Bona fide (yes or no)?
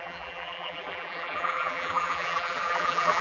no